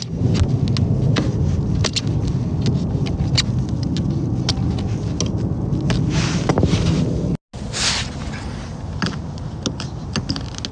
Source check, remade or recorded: recorded